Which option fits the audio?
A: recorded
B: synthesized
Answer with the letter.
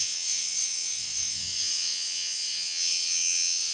B